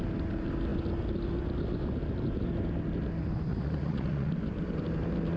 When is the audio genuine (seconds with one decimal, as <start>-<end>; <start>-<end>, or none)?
0.0-3.5; 4.3-5.4